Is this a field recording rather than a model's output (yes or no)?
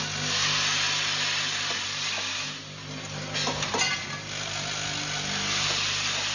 yes